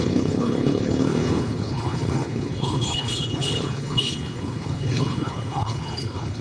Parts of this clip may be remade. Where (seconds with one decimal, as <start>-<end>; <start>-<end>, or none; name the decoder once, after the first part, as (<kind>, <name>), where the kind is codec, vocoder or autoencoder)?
0.0-6.4 (codec, HILCodec)